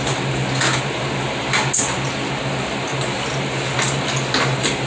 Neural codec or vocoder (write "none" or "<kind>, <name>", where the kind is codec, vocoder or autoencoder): none